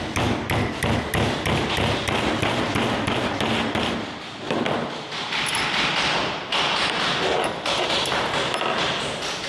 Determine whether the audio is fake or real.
real